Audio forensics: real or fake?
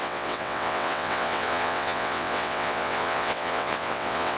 fake